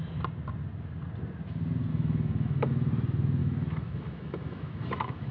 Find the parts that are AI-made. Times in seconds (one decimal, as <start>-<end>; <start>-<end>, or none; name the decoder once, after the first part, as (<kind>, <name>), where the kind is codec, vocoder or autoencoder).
1.9-2.9 (autoencoder, DAC-VAE); 3.4-5.3